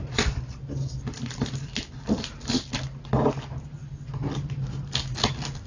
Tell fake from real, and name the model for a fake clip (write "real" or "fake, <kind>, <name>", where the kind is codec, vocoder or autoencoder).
real